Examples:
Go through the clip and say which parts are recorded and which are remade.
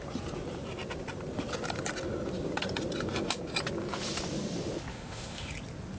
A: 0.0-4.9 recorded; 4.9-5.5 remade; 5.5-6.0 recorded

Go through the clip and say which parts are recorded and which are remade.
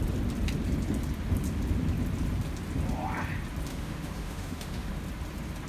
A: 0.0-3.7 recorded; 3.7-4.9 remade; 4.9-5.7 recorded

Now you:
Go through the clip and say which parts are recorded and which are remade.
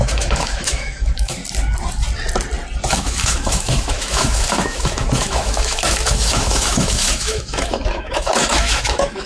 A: 0.0-1.4 remade; 1.4-2.9 recorded; 2.9-9.3 remade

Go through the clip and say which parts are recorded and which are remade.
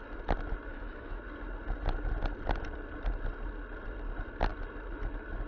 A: 0.0-0.7 recorded; 0.7-1.2 remade; 1.2-5.5 recorded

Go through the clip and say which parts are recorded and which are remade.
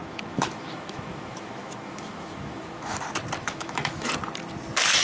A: 0.0-3.0 remade; 3.0-3.4 recorded; 3.4-4.1 remade; 4.1-5.0 recorded